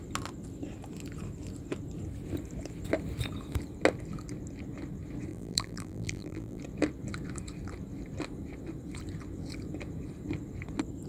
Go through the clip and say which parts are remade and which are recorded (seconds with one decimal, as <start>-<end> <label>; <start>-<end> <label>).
0.0-5.3 recorded; 5.3-6.6 remade; 6.6-11.1 recorded